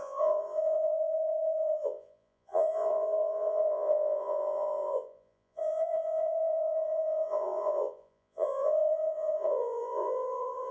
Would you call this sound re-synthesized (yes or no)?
yes